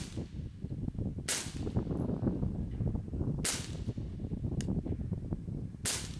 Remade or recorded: recorded